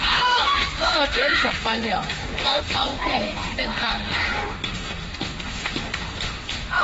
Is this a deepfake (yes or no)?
yes